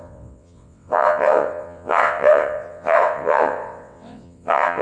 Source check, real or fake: fake